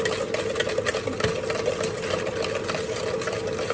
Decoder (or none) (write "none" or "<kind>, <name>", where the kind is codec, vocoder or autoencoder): none